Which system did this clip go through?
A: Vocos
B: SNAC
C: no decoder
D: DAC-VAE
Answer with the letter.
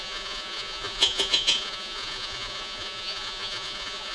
A